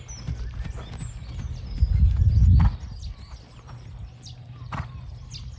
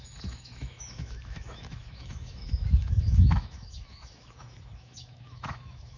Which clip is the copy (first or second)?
second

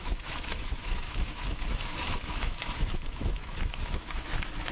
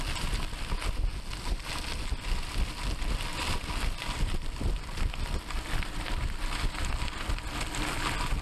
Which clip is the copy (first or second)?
first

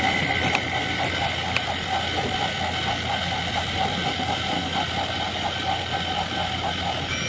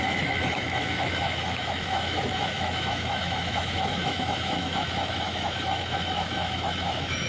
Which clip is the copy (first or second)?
second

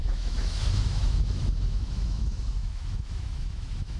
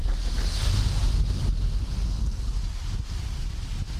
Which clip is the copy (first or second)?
first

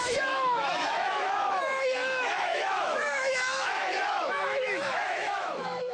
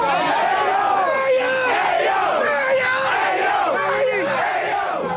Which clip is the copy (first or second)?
first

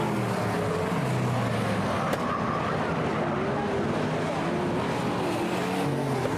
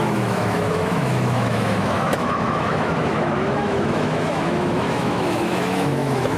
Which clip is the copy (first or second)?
second